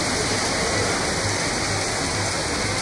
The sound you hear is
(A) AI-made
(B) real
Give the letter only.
B